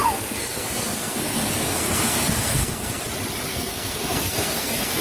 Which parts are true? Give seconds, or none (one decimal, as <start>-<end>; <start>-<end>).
3.0-3.5